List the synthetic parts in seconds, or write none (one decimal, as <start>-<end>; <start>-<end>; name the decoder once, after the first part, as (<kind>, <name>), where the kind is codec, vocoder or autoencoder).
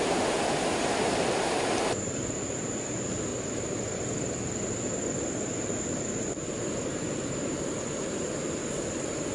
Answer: 0.0-3.3 (vocoder, BigVGAN v2); 5.2-9.3